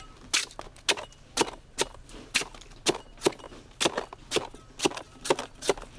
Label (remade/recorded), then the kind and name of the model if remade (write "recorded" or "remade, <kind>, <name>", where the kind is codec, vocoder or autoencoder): recorded